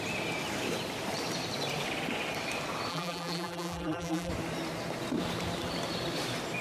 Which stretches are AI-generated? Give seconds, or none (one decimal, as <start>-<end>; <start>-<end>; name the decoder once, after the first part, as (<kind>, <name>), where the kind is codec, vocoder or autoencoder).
2.9-4.3 (vocoder, BigVGAN v2)